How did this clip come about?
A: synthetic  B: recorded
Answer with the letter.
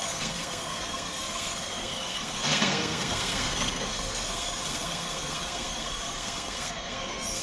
A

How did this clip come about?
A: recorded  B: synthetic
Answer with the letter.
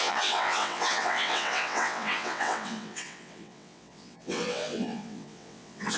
B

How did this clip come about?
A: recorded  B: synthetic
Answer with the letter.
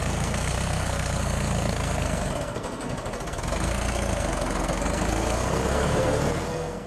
B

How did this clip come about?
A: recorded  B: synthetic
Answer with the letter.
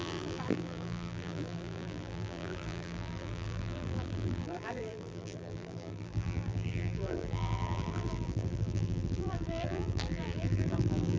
B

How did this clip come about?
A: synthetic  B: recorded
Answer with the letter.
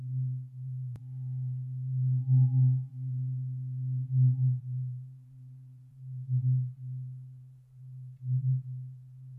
A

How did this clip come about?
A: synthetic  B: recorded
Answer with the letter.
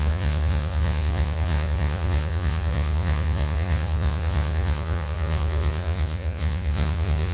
A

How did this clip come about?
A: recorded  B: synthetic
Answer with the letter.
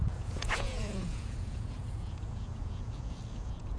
B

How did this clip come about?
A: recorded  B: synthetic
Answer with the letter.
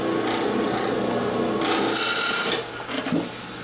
A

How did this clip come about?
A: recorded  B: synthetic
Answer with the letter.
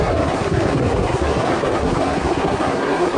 B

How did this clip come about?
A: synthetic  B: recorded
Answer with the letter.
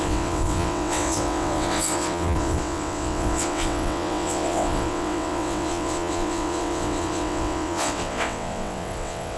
A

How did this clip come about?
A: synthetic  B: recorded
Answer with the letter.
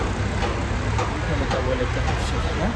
B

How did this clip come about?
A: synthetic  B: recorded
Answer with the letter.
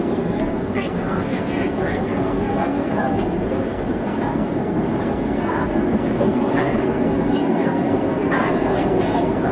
A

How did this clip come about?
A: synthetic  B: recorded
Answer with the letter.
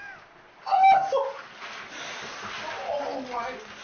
B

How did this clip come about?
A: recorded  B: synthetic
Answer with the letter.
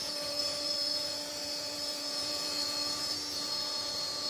B